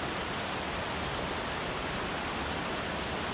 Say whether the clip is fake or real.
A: real